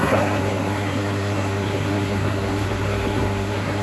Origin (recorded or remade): remade